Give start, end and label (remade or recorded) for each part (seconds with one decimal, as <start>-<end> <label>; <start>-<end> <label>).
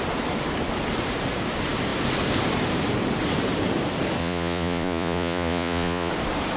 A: 0.0-4.2 recorded; 4.2-6.1 remade; 6.1-6.6 recorded